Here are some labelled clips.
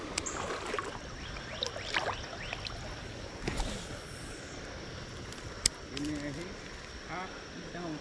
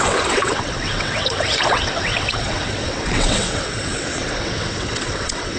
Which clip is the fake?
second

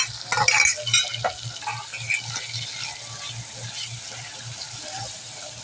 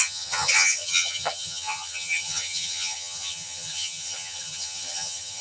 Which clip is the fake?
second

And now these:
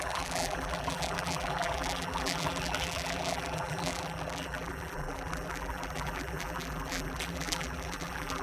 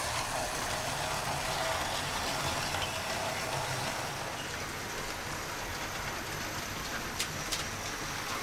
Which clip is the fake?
first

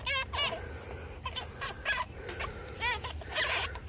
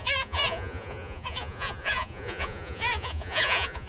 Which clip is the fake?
second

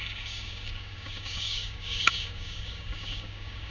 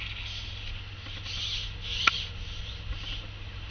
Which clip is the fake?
first